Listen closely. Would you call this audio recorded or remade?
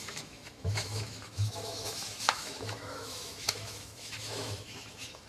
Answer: remade